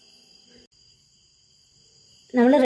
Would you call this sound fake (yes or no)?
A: no